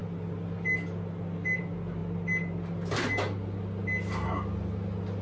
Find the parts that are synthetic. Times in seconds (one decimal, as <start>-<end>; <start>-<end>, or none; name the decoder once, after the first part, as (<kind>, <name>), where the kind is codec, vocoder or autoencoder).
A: none